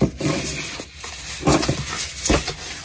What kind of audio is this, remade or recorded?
recorded